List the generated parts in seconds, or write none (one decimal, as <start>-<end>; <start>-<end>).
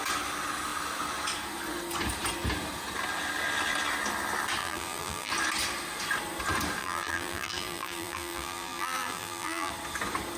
4.6-5.3; 6.8-9.7